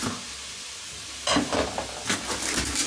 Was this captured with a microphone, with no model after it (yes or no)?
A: yes